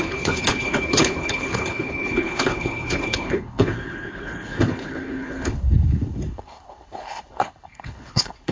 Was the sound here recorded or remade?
remade